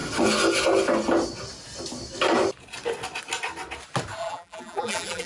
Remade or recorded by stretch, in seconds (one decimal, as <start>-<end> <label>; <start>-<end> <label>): 0.0-4.2 recorded; 4.2-5.3 remade